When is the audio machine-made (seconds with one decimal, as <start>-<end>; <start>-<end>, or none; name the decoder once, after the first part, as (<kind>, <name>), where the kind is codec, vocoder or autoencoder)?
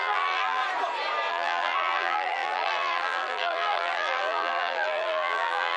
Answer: 0.0-0.6 (vocoder, BigVGAN v2); 1.3-5.8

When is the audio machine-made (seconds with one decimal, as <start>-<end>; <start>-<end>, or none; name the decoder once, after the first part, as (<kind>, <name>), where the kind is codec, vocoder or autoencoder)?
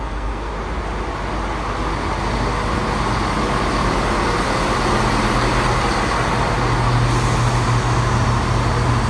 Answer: 0.0-0.5 (codec, SNAC)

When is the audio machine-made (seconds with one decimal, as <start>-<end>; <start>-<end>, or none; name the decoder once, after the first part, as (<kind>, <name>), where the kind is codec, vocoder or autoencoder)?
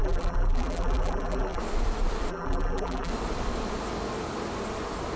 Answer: 0.0-1.6 (vocoder, BigVGAN v2); 2.3-3.1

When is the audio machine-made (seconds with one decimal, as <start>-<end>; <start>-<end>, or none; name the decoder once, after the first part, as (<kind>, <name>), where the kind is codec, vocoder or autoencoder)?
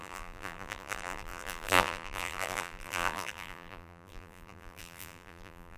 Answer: 0.0-5.8 (vocoder, BigVGAN v2)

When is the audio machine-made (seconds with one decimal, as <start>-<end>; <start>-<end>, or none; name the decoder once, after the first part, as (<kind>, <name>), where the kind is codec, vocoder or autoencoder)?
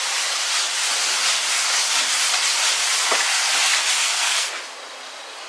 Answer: 4.0-4.5 (codec, SNAC)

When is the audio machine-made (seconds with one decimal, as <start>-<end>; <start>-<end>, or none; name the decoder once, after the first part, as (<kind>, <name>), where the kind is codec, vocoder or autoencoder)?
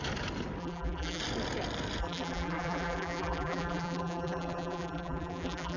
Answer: 0.6-1.2 (vocoder, BigVGAN v2); 2.0-5.8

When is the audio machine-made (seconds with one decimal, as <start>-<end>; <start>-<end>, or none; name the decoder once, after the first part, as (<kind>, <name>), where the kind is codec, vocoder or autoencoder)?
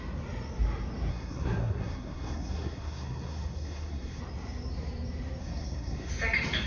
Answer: 1.1-4.2 (codec, SNAC); 5.4-6.1